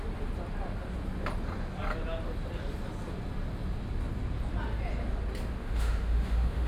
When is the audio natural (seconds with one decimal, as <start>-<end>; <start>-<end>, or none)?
0.0-5.6